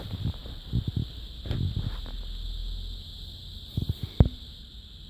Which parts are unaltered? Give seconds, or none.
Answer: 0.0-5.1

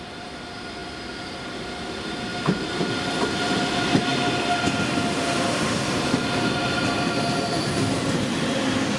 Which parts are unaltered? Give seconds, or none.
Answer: 0.0-2.3; 3.2-9.0

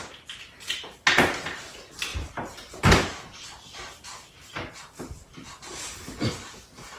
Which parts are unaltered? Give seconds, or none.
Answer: 0.0-2.1; 6.3-7.0

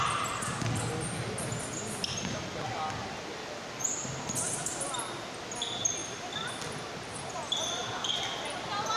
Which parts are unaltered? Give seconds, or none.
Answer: 0.0-6.0; 6.6-9.0

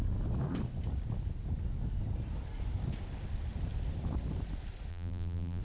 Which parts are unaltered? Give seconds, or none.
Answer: 0.0-4.9